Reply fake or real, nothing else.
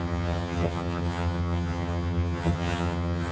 fake